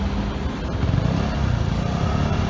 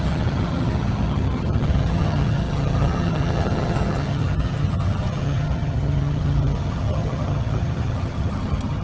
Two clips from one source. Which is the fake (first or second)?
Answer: second